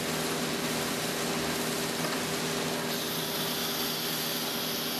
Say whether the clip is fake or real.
real